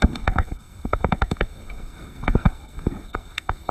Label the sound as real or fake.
fake